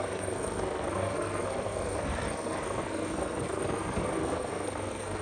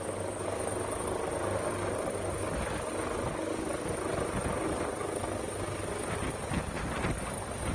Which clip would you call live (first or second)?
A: second